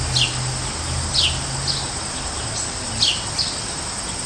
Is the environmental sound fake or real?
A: real